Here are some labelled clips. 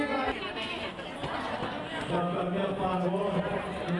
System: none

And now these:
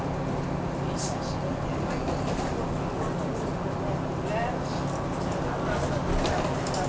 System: none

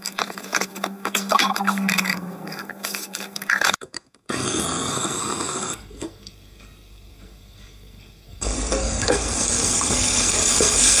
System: codec, SNAC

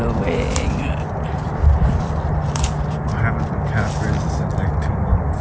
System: vocoder, BigVGAN v2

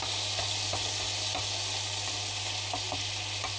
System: none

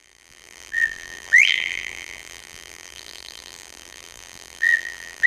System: vocoder, BigVGAN v2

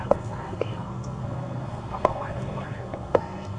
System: codec, SNAC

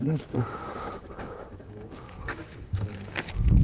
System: codec, DAC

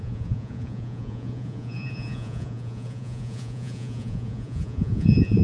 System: vocoder, Vocos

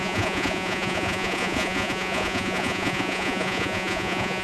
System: vocoder, Vocos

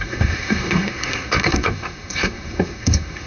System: codec, SNAC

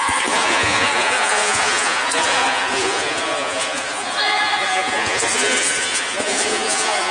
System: vocoder, Vocos